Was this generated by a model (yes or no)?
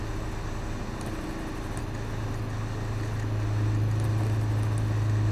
no